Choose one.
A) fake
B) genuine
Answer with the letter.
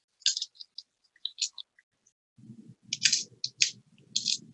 B